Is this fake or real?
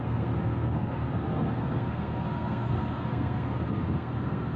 fake